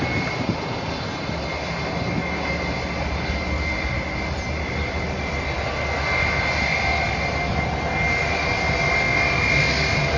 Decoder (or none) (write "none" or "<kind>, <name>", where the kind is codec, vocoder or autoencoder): none